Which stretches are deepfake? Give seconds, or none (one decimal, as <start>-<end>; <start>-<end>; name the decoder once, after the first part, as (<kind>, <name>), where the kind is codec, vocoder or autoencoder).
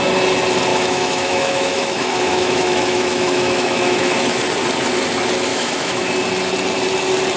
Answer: 0.7-4.4 (autoencoder, DAC-VAE); 5.5-6.0